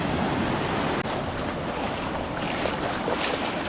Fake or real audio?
real